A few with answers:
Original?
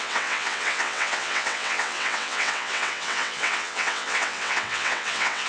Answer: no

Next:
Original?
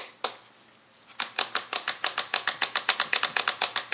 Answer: yes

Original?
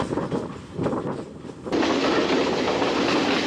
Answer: yes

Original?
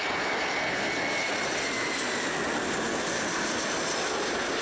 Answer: yes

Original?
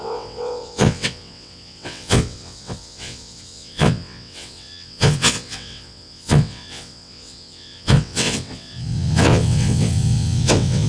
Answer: no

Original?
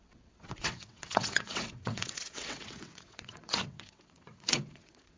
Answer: no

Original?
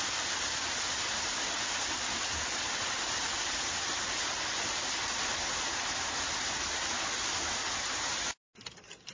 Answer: yes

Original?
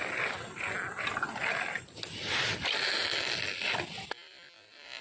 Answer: yes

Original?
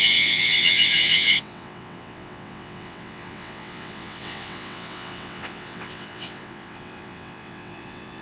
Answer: no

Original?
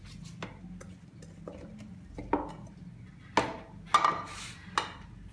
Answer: yes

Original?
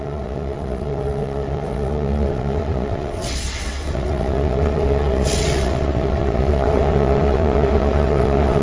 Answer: no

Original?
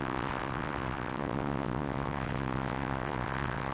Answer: no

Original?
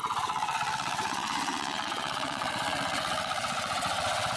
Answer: no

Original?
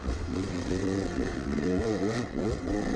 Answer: no